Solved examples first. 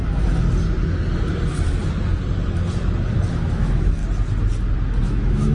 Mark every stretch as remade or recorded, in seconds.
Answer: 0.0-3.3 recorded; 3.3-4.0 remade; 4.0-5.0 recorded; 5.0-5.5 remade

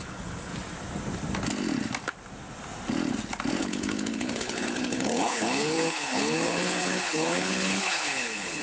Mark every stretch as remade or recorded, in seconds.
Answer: 0.0-0.5 remade; 0.5-3.6 recorded; 3.6-8.6 remade